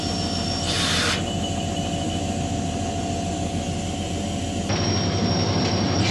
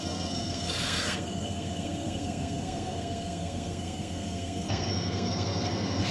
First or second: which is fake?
second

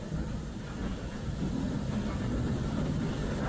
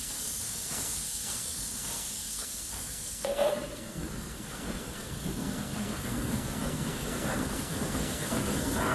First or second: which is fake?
second